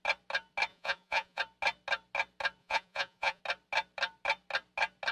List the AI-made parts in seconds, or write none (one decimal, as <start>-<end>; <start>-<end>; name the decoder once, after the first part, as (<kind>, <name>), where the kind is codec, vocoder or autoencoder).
0.7-1.4 (vocoder, Vocos); 2.6-3.4